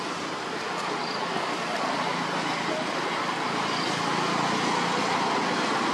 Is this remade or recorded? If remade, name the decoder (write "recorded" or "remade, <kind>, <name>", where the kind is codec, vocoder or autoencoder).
recorded